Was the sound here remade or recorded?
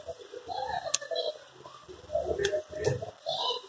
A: recorded